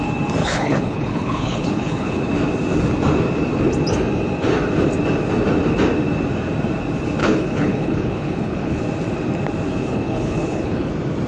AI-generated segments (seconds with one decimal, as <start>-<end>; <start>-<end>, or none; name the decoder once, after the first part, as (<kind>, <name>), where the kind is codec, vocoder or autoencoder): 0.4-2.2 (codec, HILCodec); 7.2-8.8; 9.8-10.9